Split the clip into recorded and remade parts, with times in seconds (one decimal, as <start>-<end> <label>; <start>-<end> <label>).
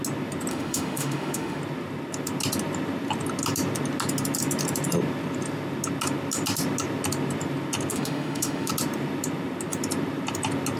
0.0-0.5 recorded; 0.5-1.6 remade; 1.6-7.9 recorded; 7.9-8.7 remade; 8.7-10.8 recorded